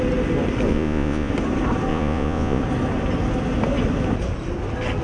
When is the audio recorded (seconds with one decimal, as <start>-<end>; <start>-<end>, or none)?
0.0-0.7; 1.3-1.9; 2.6-5.0